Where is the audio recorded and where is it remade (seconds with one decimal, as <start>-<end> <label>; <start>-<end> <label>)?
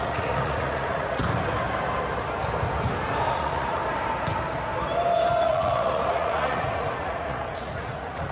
0.0-1.2 remade; 1.2-3.3 recorded; 3.3-3.8 remade; 3.8-5.4 recorded; 5.4-8.3 remade